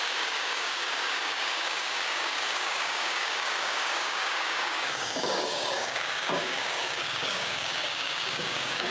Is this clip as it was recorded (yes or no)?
no